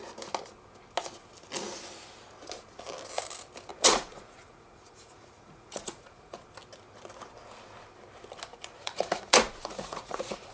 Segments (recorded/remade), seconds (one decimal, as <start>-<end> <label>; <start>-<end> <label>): 0.0-3.7 recorded; 3.7-6.4 remade; 6.4-8.5 recorded; 8.5-10.5 remade